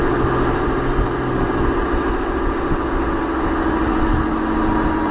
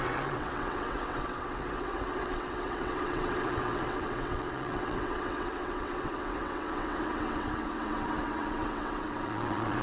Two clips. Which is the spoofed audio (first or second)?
second